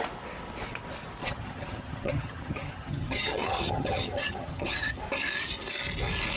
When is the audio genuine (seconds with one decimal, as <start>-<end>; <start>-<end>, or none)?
0.0-1.2; 5.0-6.4